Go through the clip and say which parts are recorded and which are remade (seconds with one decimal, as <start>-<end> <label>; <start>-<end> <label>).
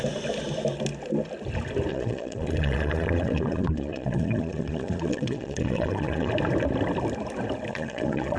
0.0-1.9 recorded; 1.9-6.3 remade; 6.3-7.7 recorded; 7.7-8.4 remade